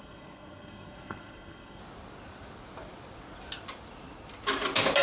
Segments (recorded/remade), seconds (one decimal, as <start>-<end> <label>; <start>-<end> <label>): 0.0-1.8 remade; 1.8-5.0 recorded